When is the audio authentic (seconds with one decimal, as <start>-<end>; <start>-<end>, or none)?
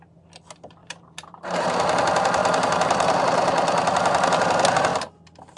0.0-0.8; 1.7-2.4; 3.2-5.6